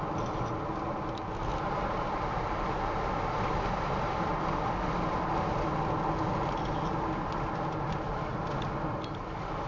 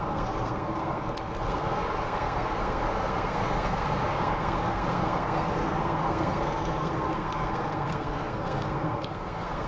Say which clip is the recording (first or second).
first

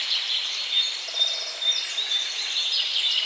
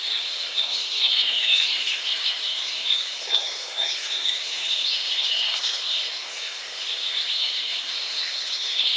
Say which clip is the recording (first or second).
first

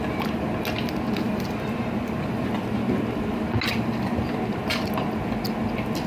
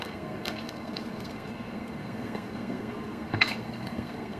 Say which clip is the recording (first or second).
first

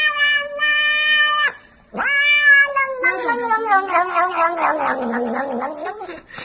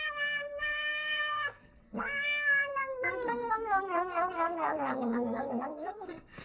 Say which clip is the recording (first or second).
first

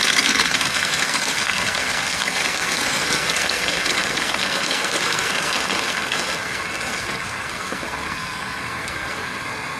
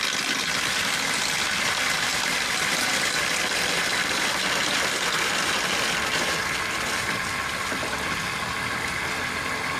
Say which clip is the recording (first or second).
second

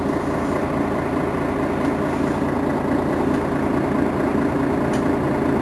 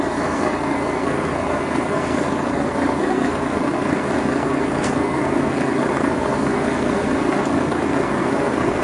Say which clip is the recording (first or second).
first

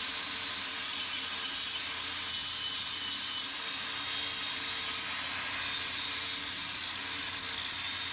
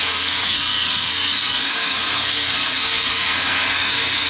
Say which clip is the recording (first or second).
first